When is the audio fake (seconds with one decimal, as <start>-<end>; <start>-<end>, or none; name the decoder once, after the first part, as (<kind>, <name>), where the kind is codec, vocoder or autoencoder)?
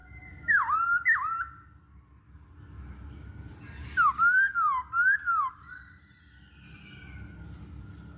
none